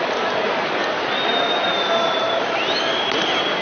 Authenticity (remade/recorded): recorded